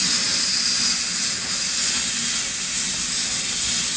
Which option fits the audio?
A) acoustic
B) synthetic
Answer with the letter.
A